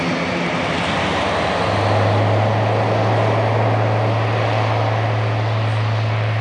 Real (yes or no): yes